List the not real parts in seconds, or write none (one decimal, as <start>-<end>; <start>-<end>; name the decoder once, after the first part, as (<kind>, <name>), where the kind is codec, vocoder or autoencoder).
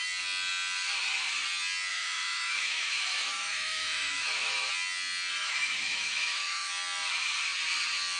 1.9-4.7 (autoencoder, DAC-VAE); 5.4-6.7